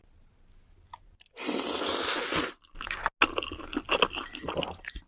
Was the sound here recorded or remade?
recorded